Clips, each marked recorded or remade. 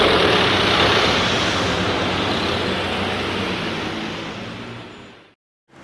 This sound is recorded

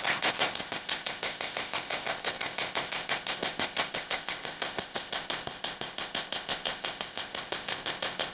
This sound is remade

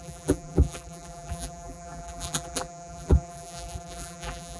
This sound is remade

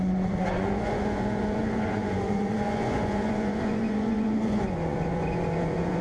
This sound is remade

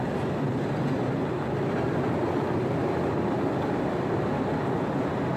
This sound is recorded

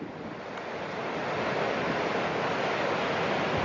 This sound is recorded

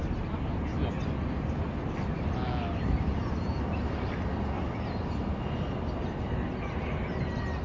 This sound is recorded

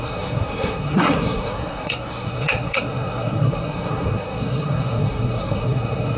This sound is remade